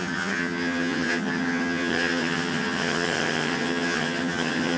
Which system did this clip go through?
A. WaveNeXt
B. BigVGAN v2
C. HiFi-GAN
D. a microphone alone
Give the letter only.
C